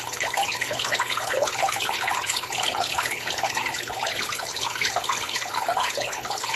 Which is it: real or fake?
fake